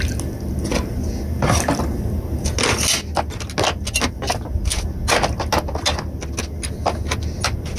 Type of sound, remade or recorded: recorded